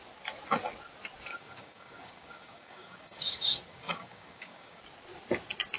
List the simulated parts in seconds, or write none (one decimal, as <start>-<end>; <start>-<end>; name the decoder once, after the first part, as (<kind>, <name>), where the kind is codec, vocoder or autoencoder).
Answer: 1.3-4.8 (codec, DAC)